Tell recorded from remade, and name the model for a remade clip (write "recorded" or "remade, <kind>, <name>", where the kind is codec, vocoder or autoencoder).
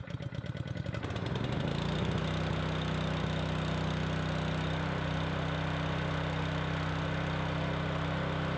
recorded